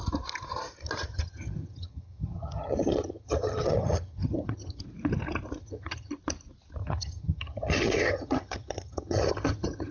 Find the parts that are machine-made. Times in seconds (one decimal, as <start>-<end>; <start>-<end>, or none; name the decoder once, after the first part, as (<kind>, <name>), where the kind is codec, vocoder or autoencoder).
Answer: 1.1-4.8 (vocoder, HiFi-GAN); 5.6-6.1; 6.8-9.9

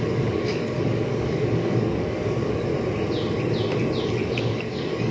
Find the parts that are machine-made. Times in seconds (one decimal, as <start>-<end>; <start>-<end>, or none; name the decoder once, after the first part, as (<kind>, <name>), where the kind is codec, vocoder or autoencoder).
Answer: 0.0-2.7 (codec, DAC); 4.1-5.1

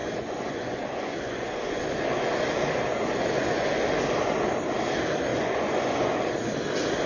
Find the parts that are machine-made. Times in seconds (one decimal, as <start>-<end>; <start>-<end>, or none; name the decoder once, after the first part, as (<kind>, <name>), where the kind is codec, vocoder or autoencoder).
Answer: 0.0-1.8 (vocoder, Vocos); 2.9-3.7; 5.3-6.1

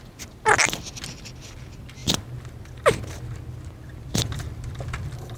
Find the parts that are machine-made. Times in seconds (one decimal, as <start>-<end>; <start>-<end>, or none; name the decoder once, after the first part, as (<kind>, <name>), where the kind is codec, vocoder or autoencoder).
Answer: none

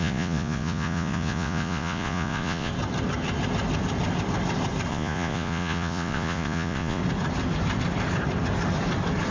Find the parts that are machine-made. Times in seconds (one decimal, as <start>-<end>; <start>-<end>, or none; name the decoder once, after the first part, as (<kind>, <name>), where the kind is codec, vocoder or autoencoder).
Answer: 0.0-2.7 (vocoder, Vocos); 4.9-7.0

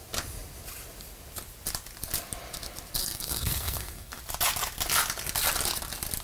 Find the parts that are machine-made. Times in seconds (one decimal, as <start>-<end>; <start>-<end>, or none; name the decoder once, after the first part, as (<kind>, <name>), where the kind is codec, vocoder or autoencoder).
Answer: 3.0-4.2 (codec, SNAC)

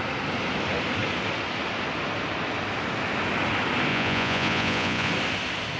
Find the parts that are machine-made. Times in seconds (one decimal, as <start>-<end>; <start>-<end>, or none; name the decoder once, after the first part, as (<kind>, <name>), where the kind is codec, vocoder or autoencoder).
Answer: 3.9-5.1 (vocoder, Vocos)